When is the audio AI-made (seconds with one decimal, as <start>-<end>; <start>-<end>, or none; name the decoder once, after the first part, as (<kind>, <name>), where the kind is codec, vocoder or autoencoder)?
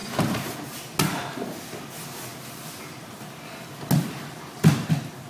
none